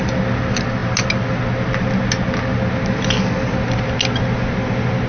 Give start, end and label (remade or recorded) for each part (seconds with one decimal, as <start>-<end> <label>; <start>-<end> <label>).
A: 0.0-5.1 recorded